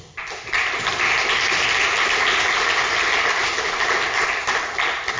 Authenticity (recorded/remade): recorded